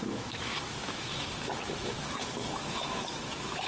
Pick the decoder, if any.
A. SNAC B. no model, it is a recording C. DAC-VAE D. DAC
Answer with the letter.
C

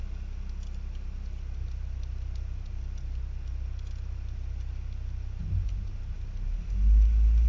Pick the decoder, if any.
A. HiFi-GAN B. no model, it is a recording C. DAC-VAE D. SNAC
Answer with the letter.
B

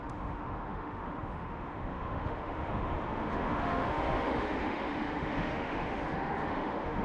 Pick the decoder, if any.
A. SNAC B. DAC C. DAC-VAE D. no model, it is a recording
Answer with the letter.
C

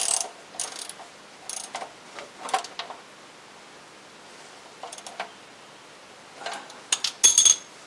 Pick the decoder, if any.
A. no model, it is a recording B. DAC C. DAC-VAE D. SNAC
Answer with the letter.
A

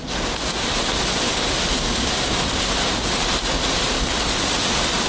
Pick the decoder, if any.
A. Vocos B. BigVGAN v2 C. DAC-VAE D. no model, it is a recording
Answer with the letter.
D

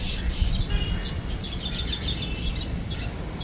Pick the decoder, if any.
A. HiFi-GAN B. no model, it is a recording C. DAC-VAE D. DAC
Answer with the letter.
B